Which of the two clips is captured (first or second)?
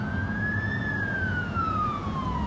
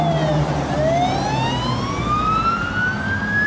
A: second